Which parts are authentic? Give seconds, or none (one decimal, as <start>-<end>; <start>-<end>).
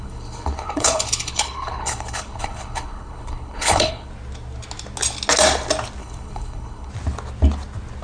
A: 4.1-6.0; 6.9-8.0